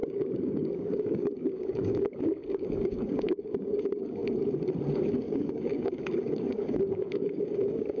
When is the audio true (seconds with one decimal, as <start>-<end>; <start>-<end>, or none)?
4.2-5.1